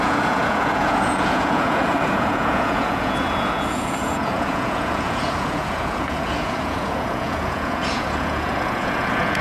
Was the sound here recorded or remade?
remade